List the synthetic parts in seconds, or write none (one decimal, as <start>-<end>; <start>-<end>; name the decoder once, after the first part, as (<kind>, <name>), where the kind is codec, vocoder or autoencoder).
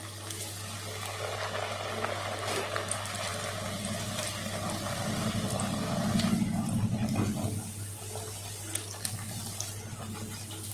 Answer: none